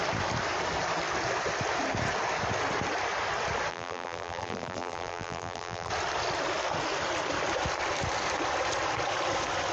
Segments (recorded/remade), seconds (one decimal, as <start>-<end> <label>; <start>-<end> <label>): 0.0-3.7 recorded; 3.7-5.9 remade; 5.9-9.7 recorded